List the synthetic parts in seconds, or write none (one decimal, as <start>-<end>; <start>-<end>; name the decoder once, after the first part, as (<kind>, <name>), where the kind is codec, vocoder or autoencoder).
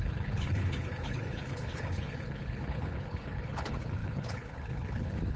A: 0.0-5.4 (codec, HILCodec)